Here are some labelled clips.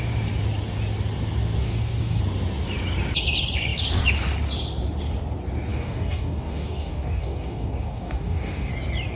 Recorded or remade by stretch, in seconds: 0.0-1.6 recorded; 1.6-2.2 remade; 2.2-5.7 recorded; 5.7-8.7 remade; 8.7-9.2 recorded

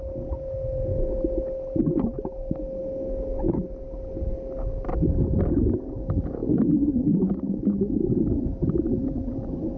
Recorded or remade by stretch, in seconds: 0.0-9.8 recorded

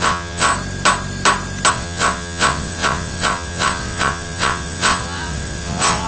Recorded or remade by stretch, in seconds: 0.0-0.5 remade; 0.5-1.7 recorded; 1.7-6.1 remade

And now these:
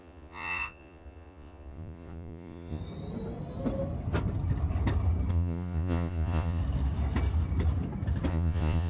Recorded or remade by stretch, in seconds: 0.0-2.8 remade; 2.8-5.3 recorded; 5.3-6.6 remade; 6.6-8.3 recorded; 8.3-8.9 remade

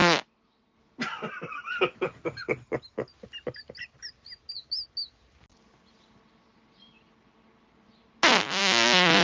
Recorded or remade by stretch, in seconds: 0.0-9.2 recorded